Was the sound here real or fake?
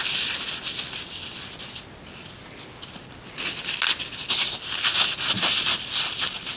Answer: real